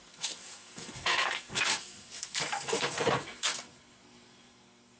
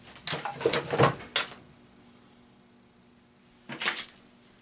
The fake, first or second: first